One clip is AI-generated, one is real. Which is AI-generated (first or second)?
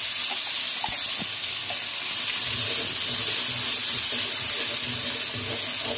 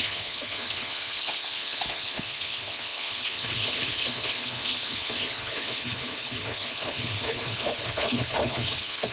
second